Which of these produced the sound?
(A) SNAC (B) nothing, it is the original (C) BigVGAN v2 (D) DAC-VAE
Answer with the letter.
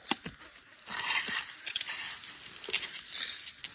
B